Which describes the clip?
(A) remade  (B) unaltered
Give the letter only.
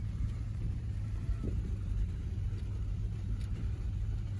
A